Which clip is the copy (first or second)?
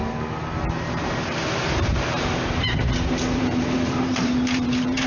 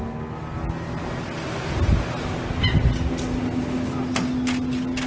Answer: first